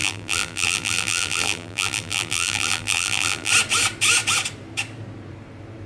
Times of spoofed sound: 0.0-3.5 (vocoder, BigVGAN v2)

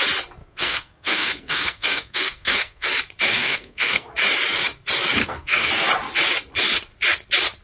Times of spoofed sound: 0.4-2.9 (codec, SNAC); 3.3-4.1; 5.2-5.7

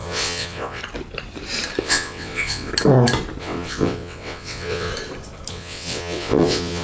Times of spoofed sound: 0.0-0.8 (vocoder, WaveNeXt); 1.8-2.7; 3.4-4.9; 5.5-6.8